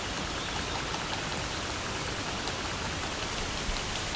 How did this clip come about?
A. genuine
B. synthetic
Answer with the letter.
A